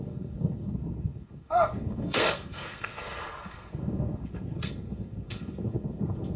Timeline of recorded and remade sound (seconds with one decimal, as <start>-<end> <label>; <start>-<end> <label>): 0.0-6.4 remade